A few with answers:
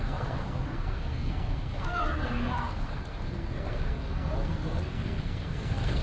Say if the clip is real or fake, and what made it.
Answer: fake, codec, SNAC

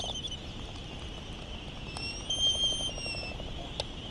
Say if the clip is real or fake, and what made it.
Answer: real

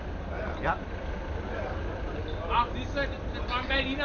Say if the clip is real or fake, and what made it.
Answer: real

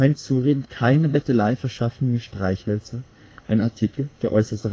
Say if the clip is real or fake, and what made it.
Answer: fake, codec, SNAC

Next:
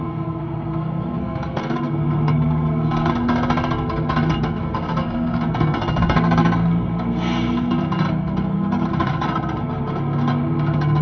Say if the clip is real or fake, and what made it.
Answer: fake, codec, SNAC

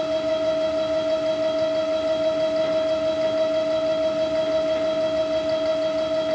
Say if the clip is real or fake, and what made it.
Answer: real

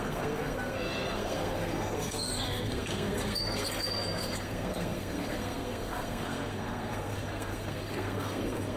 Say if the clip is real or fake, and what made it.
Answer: fake, codec, SNAC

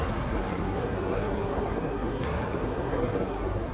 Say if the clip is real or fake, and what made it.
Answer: fake, codec, SNAC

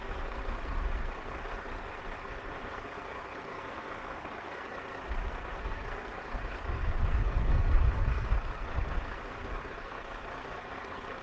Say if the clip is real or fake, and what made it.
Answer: fake, codec, SNAC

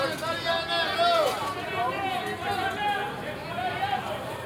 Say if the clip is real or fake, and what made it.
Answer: real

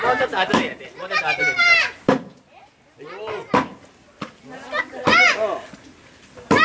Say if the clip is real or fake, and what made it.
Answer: real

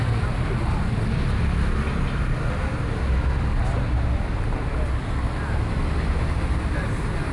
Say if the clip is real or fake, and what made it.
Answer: real